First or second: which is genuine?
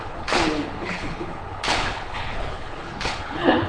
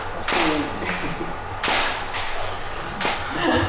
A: second